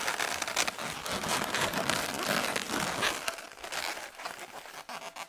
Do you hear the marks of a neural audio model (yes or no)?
no